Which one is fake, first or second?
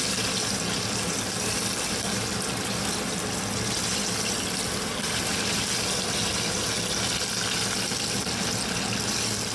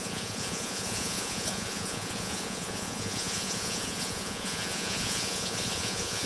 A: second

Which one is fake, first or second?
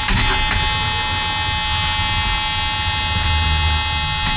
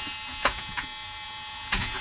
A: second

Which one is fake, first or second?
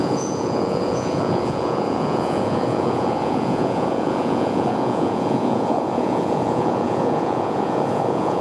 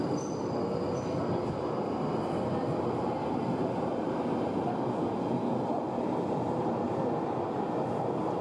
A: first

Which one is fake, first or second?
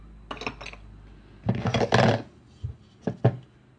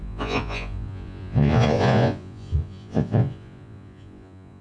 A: second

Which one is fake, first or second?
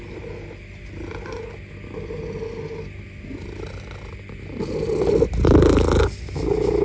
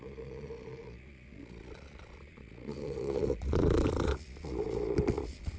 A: second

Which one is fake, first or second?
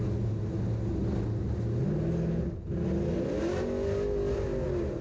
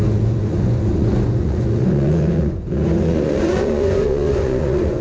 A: second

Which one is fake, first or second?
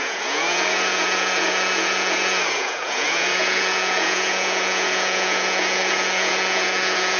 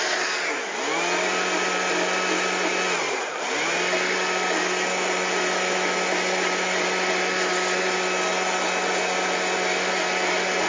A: first